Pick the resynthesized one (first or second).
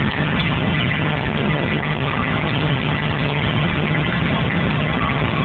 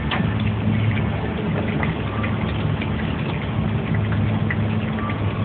first